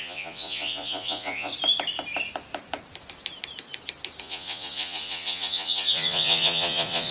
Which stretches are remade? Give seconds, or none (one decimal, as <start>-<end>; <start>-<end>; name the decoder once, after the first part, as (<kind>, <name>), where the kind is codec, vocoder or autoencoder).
0.0-1.5 (vocoder, Vocos); 4.2-7.1